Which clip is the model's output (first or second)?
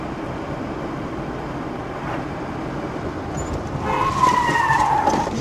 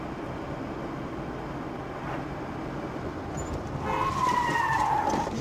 first